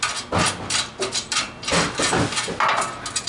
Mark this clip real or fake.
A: real